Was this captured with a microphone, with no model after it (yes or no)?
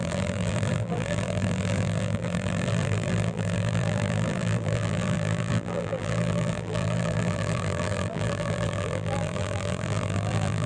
no